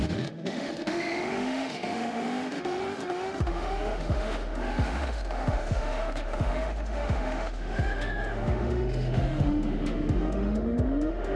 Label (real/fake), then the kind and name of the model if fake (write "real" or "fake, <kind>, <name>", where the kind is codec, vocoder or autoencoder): fake, autoencoder, DAC-VAE